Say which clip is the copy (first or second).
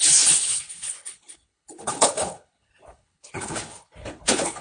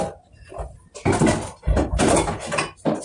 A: first